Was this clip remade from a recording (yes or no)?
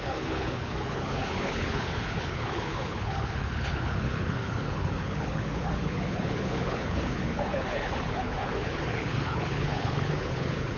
yes